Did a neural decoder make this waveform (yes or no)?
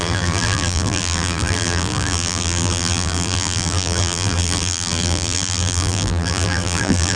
yes